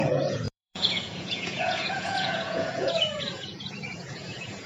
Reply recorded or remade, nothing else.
remade